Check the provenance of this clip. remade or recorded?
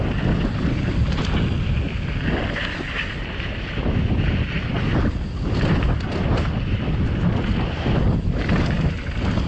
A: recorded